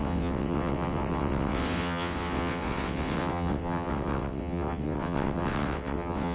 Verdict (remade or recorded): remade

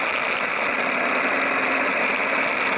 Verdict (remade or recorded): recorded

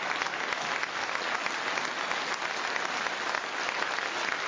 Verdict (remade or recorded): recorded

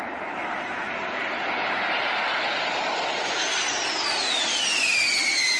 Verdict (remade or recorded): recorded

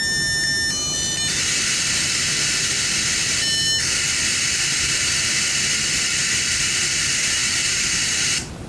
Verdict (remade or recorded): recorded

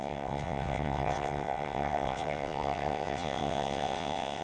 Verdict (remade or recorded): remade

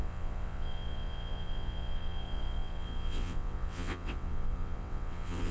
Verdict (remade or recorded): remade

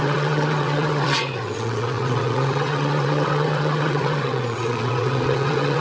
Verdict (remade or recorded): remade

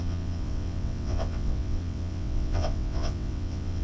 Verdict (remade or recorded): remade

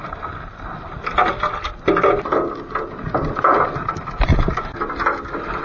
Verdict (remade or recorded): recorded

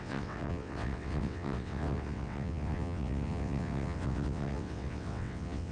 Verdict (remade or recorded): remade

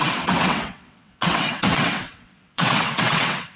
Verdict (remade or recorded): remade